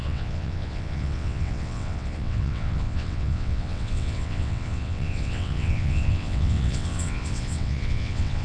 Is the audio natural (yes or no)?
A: no